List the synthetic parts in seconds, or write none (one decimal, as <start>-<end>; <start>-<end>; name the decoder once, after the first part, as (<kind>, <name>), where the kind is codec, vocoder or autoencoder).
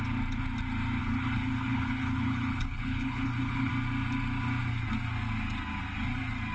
1.0-3.7 (codec, HILCodec)